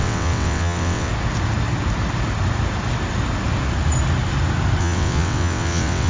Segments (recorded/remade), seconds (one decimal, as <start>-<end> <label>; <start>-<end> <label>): 0.0-1.1 remade; 1.1-4.8 recorded; 4.8-6.1 remade